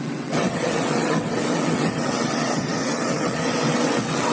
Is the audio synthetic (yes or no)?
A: yes